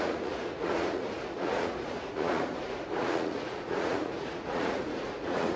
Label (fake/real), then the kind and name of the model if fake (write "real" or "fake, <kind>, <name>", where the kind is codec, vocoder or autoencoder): fake, vocoder, Vocos